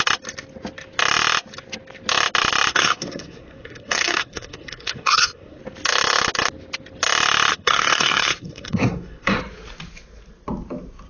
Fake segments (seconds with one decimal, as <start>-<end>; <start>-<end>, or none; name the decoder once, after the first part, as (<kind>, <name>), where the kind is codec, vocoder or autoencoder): 2.7-5.6 (codec, SNAC); 7.5-9.4